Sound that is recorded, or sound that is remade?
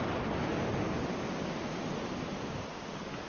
recorded